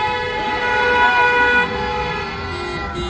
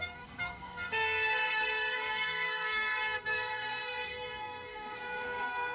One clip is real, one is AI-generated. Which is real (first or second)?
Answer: first